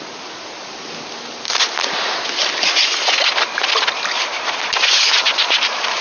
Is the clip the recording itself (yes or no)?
yes